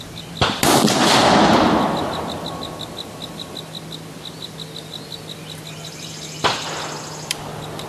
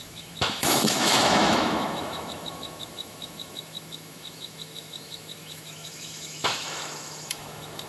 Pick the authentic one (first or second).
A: first